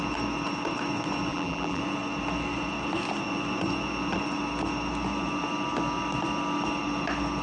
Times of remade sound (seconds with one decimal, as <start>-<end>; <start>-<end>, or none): 1.3-1.8